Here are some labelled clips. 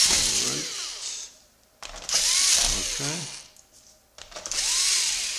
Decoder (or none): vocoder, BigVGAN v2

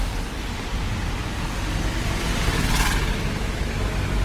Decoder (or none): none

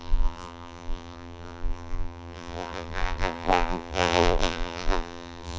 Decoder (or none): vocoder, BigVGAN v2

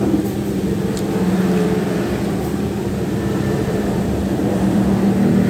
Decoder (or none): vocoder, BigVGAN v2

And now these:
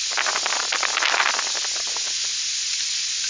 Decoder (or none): none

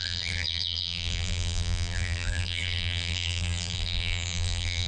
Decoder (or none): vocoder, BigVGAN v2